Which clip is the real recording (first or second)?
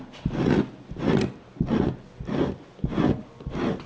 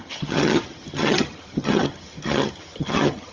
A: first